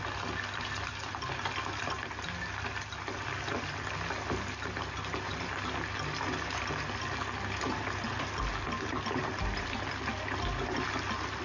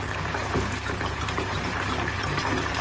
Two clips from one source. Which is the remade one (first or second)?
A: second